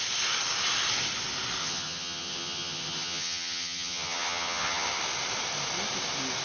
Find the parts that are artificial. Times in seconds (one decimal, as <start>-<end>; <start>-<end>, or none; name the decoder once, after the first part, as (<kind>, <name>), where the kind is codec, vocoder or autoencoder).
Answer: 1.6-5.0 (vocoder, HiFi-GAN)